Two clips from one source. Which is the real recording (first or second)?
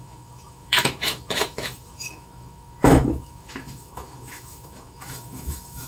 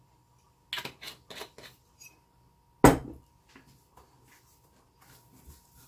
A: second